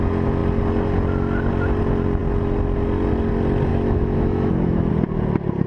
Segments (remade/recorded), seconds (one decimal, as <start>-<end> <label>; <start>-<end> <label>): 0.0-3.7 recorded; 3.7-4.9 remade; 4.9-5.7 recorded